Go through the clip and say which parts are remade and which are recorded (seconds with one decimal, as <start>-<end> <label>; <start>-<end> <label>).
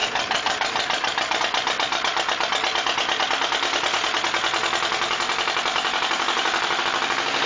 0.0-1.4 remade; 1.4-5.7 recorded; 5.7-6.8 remade; 6.8-7.5 recorded